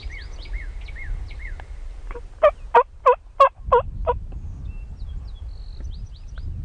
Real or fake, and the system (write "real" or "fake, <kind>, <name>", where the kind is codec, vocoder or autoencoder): real